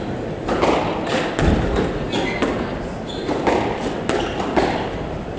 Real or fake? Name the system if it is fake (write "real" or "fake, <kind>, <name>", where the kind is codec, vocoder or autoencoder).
real